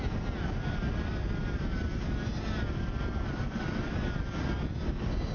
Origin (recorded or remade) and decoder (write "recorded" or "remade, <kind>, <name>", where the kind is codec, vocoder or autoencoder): recorded